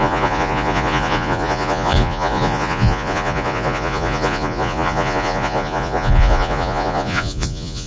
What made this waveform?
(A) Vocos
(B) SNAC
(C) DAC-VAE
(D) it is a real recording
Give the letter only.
A